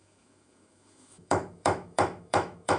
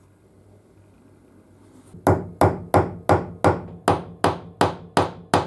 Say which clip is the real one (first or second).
second